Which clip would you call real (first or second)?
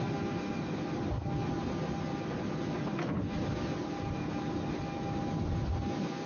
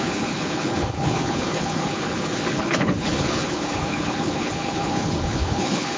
first